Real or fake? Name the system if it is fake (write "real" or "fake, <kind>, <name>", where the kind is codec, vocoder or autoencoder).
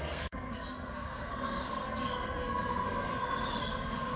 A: fake, codec, SNAC